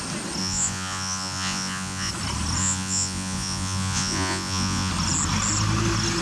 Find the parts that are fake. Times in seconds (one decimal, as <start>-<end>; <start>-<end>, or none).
0.4-2.1; 2.6-4.9